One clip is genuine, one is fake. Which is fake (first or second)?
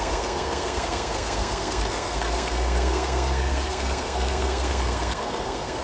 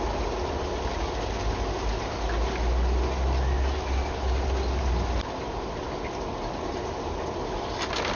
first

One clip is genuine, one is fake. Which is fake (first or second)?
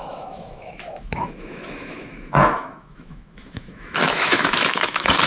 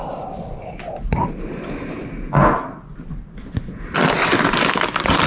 first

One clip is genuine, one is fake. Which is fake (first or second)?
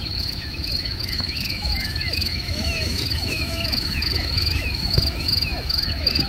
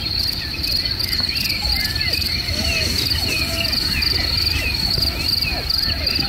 first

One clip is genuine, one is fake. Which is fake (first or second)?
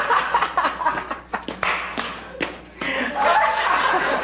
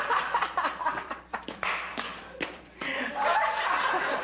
second